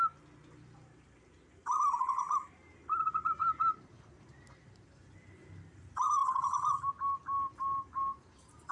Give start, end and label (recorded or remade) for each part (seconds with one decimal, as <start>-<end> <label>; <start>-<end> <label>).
0.0-8.7 recorded